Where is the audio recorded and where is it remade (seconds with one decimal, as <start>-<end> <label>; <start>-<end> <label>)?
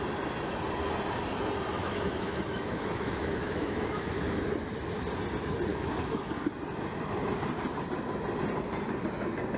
0.0-1.8 recorded; 1.8-4.1 remade; 4.1-5.7 recorded; 5.7-6.3 remade; 6.3-9.6 recorded